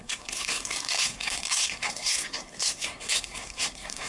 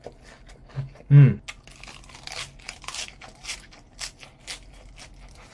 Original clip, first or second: second